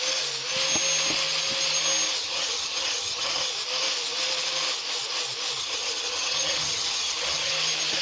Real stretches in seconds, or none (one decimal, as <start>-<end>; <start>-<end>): 0.0-2.2; 3.5-5.6; 7.5-8.0